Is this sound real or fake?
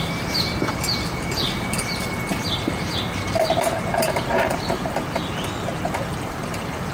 fake